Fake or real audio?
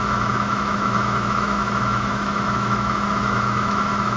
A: fake